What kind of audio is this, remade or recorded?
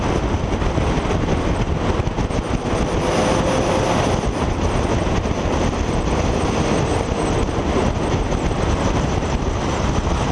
recorded